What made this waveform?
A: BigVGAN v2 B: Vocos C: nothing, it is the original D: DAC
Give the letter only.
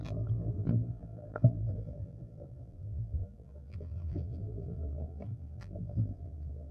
A